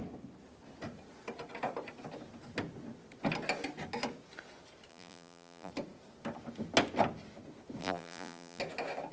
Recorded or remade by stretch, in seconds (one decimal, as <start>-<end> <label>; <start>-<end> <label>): 0.0-4.9 recorded; 4.9-5.7 remade; 5.7-7.8 recorded; 7.8-8.6 remade; 8.6-9.1 recorded